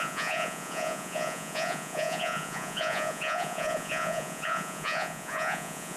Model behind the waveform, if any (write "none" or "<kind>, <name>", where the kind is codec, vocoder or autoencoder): vocoder, Vocos